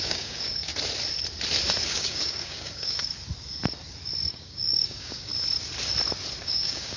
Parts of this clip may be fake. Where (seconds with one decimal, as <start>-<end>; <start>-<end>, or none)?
0.0-0.7; 1.8-3.1; 4.3-5.3; 6.4-7.0